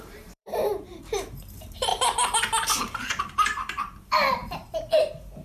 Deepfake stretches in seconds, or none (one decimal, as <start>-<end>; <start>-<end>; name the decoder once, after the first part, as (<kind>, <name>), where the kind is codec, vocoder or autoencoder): 0.0-5.4 (vocoder, BigVGAN v2)